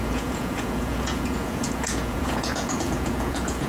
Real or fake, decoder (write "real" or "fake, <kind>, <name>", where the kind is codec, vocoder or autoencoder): fake, vocoder, Vocos